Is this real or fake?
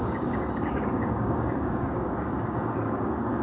fake